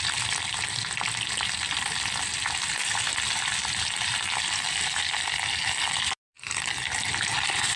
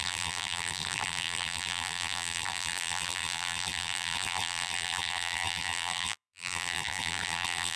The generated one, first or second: second